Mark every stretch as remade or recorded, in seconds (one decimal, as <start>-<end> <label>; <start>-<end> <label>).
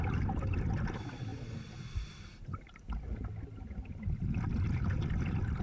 0.0-5.6 recorded